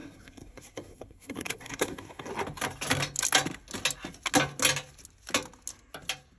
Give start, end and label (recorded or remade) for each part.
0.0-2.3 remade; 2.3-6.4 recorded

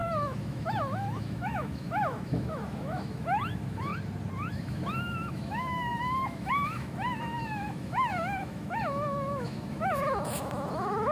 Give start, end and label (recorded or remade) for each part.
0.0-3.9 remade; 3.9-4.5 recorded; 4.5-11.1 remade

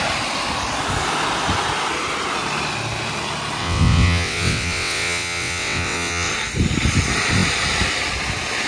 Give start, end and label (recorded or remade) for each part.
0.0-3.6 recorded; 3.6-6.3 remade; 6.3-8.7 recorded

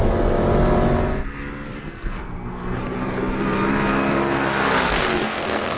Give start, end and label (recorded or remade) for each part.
0.0-1.8 recorded; 1.8-2.8 remade; 2.8-4.8 recorded; 4.8-5.8 remade

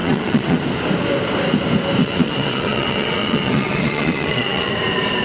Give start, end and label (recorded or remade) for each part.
0.0-0.6 remade; 0.6-2.0 recorded; 2.0-4.7 remade; 4.7-5.2 recorded

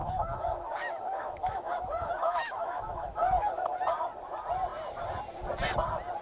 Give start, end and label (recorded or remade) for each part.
0.0-3.5 remade; 3.5-6.2 recorded

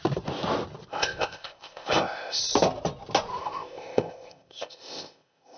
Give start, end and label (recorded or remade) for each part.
0.0-0.9 recorded; 0.9-2.4 remade; 2.4-3.4 recorded; 3.4-5.6 remade